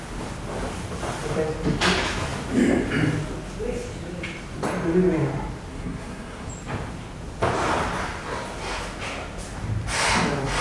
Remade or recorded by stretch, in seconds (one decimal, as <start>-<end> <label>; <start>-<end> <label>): 0.0-5.7 recorded; 5.7-6.5 remade; 6.5-10.6 recorded